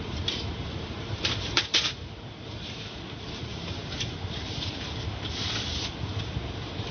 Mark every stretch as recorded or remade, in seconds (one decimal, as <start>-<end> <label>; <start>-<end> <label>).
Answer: 0.0-6.9 remade